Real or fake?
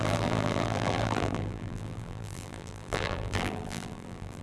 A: fake